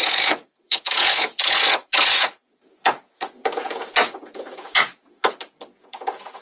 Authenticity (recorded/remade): remade